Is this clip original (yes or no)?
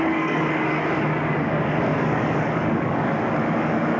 no